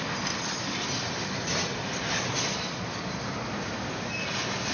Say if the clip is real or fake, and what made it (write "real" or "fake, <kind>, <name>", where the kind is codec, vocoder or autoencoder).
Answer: real